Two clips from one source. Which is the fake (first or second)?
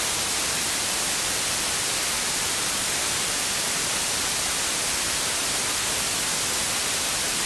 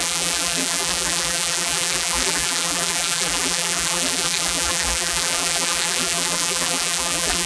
second